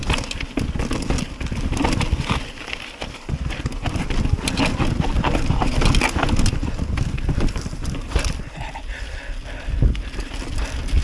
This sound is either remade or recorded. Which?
recorded